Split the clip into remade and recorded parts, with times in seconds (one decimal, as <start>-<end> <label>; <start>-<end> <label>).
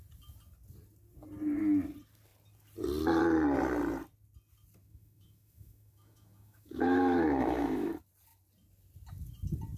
0.0-4.8 recorded; 4.8-7.9 remade; 7.9-9.8 recorded